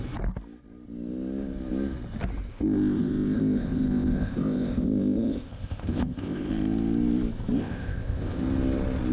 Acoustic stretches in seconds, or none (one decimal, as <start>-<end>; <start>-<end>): 0.0-2.5; 6.5-7.6; 8.4-9.1